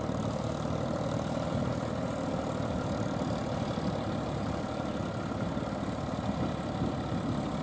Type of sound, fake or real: real